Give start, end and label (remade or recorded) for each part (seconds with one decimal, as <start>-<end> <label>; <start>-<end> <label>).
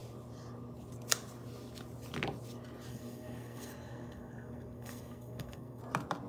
0.0-2.9 recorded; 2.9-5.8 remade; 5.8-6.3 recorded